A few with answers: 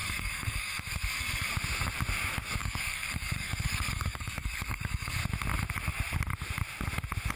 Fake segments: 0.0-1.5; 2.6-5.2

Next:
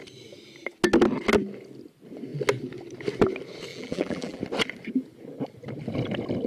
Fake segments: 3.7-4.4

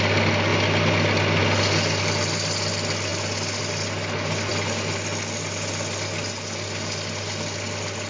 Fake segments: none

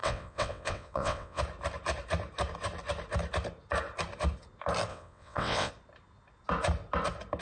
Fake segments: 0.0-1.4; 4.9-5.7

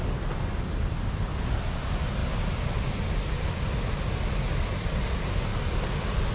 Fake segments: none